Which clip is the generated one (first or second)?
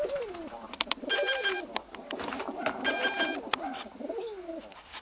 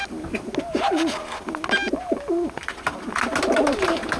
first